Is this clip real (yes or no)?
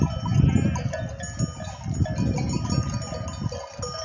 yes